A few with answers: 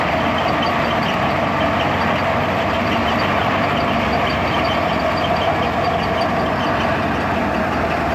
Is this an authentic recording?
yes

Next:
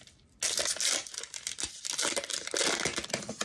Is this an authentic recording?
yes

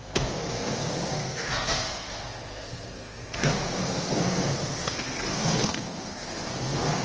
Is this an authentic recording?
no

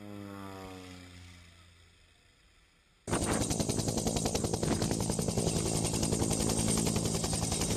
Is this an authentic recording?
yes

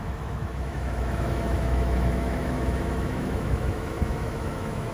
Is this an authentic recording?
no